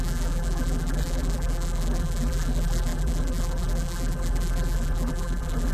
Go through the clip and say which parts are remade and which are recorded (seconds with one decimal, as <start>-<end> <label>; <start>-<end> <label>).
0.0-5.7 remade